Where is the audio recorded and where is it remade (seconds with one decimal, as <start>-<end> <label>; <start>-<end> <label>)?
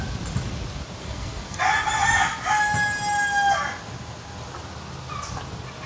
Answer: 0.0-1.0 recorded; 1.0-1.6 remade; 1.6-5.9 recorded